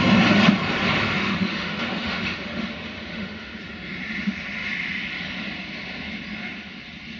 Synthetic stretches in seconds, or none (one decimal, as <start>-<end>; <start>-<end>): 1.2-3.6